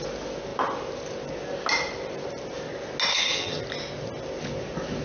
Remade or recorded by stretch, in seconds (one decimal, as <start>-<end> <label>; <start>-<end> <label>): 0.0-3.1 recorded; 3.1-3.6 remade; 3.6-5.0 recorded